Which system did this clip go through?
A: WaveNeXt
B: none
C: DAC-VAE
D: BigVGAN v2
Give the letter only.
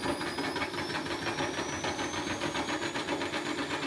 B